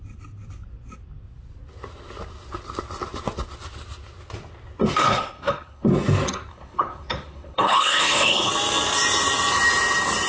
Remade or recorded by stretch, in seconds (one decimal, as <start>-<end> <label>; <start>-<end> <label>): 0.0-5.0 recorded; 5.0-5.9 remade; 5.9-6.5 recorded; 6.5-8.5 remade; 8.5-10.3 recorded